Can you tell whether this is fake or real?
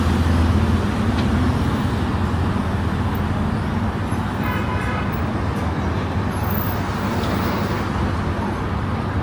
real